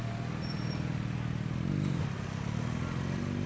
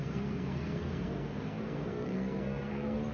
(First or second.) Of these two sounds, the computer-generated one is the second